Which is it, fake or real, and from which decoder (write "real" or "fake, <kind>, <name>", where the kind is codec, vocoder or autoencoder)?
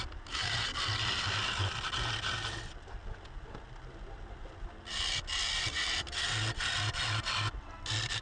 real